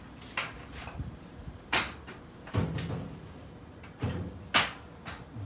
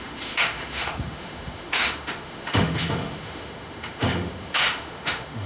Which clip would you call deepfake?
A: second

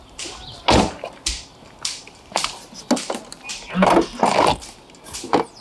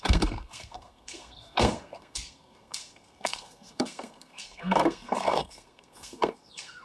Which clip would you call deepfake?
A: second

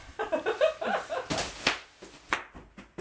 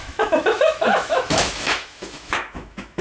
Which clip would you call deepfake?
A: second